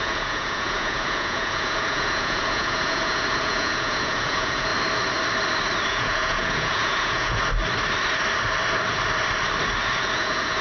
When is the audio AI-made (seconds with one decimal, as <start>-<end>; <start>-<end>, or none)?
0.0-4.7; 5.9-7.4; 10.0-10.6